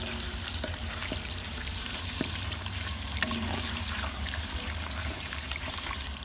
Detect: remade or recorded remade